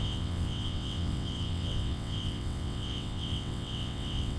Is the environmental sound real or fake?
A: fake